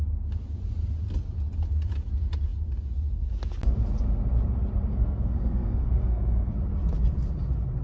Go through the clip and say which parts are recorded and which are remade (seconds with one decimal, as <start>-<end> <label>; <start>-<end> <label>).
0.0-4.9 recorded; 4.9-6.5 remade; 6.5-7.8 recorded